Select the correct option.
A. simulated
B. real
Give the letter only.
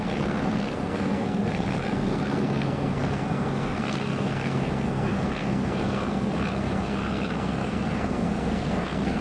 A